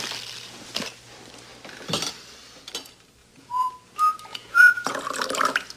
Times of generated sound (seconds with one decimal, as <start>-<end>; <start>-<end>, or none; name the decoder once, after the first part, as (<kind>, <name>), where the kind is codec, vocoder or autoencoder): 3.2-3.7 (vocoder, Vocos); 4.3-5.0